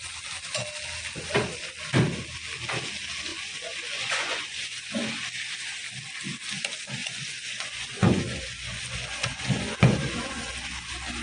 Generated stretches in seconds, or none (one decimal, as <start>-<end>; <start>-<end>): 3.3-5.1; 7.0-10.5